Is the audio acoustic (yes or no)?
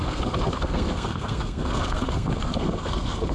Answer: no